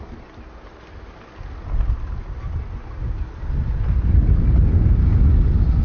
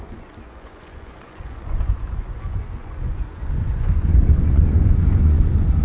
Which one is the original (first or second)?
first